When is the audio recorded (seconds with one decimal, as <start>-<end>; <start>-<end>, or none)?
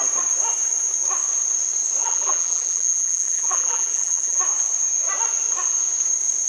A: 0.0-2.0; 4.4-6.5